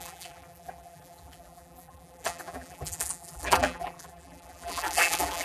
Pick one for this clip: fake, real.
fake